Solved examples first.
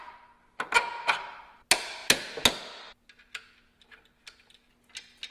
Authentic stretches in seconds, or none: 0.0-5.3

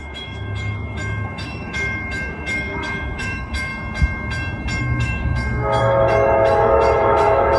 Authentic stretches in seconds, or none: 3.7-4.8

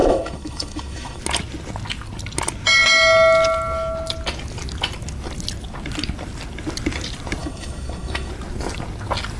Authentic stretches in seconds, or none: 1.2-7.4; 8.3-9.4

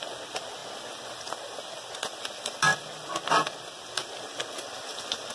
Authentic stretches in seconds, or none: 0.0-5.3

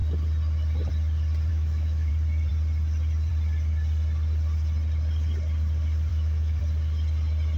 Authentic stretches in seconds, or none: 0.0-1.5; 2.1-6.1; 6.6-7.6

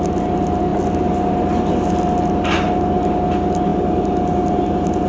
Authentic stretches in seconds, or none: 0.0-5.1